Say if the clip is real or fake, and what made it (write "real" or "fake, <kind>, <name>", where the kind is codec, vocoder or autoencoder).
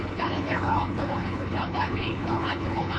fake, codec, HILCodec